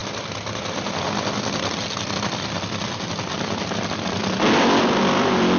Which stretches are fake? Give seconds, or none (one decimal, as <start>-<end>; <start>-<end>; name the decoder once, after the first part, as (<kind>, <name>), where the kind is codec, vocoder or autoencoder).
1.7-4.2 (vocoder, BigVGAN v2); 4.8-5.6